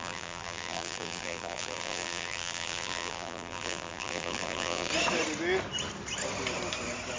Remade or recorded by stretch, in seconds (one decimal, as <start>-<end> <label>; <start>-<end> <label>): 0.0-4.9 remade; 4.9-7.2 recorded